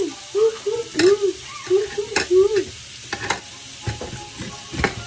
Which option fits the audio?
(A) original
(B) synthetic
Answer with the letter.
A